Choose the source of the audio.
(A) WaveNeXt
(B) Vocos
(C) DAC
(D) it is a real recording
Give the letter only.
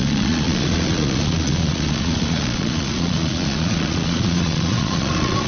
B